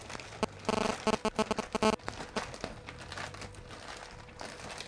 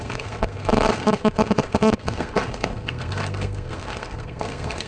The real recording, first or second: first